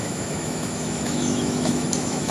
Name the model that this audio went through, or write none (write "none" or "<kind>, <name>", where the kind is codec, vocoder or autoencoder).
autoencoder, DAC-VAE